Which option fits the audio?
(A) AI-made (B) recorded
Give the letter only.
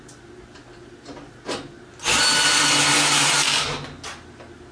B